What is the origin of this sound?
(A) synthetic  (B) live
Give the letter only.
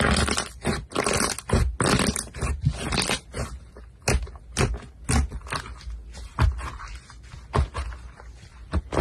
B